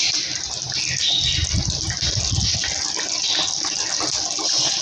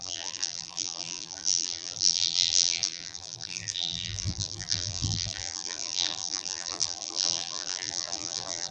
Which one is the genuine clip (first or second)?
first